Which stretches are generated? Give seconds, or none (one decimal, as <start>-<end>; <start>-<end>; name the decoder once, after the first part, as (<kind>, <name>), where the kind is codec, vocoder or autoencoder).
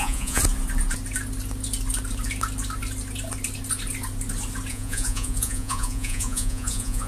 0.0-0.4 (vocoder, Vocos); 4.7-7.1